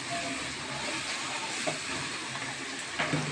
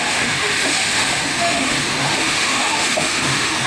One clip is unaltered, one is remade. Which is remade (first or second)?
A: second